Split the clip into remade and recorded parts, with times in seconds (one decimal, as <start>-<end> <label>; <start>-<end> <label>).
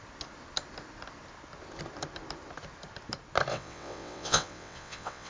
0.0-3.5 recorded; 3.5-5.3 remade